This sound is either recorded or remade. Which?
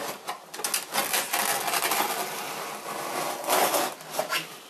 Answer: recorded